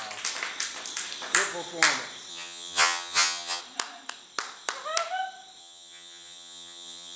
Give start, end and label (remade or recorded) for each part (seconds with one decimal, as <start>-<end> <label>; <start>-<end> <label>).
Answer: 0.0-2.3 recorded; 2.3-3.6 remade; 3.6-5.6 recorded; 5.6-7.2 remade